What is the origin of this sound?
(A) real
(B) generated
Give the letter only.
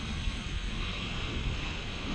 B